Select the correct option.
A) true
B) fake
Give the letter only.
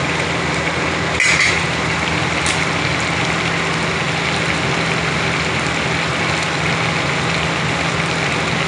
A